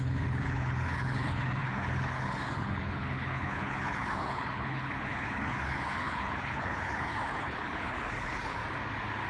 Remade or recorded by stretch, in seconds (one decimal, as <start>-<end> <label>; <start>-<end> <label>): 0.0-8.6 remade; 8.6-9.3 recorded